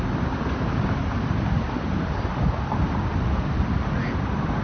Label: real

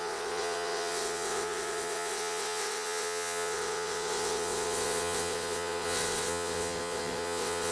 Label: fake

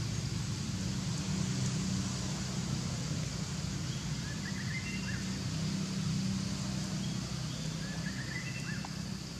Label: real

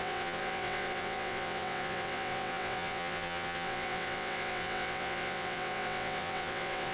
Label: fake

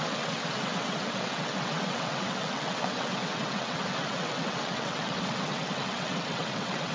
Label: fake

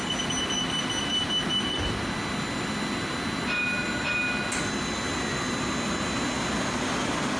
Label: real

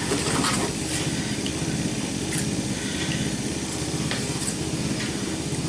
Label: fake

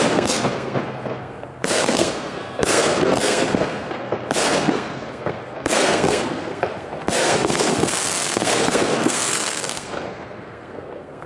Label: fake